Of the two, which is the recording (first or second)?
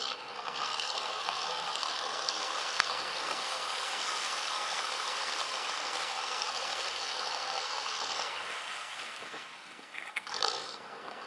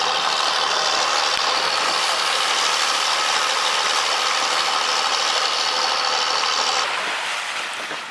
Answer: second